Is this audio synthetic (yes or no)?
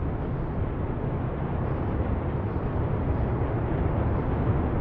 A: no